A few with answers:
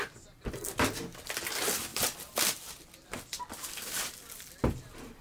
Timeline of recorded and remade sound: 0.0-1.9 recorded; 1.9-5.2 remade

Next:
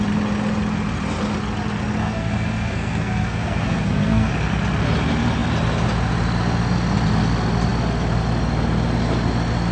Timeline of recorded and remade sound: 0.0-2.0 recorded; 2.0-4.3 remade; 4.3-9.7 recorded

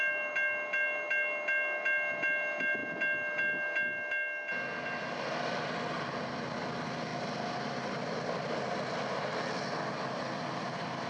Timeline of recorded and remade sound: 0.0-11.1 recorded

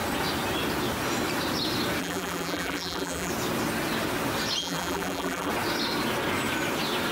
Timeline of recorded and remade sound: 0.0-2.0 recorded; 2.0-3.3 remade; 3.3-4.6 recorded; 4.6-5.5 remade; 5.5-7.1 recorded

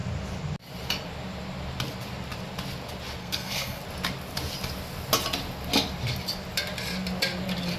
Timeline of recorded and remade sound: 0.0-3.2 recorded; 3.2-3.8 remade; 3.8-7.8 recorded

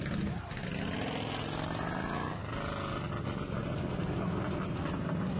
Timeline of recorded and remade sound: 0.0-5.4 recorded

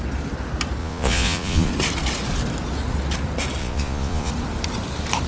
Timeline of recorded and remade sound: 0.0-0.8 recorded; 0.8-1.7 remade; 1.7-3.6 recorded; 3.6-4.3 remade; 4.3-5.3 recorded